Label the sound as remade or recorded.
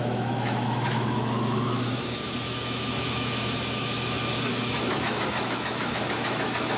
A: remade